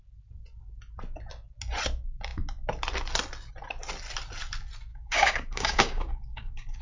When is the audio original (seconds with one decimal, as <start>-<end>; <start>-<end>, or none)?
0.0-4.9